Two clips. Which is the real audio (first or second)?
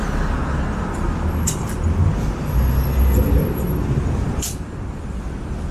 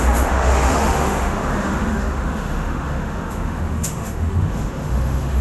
first